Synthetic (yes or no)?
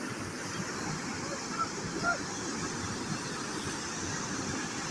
no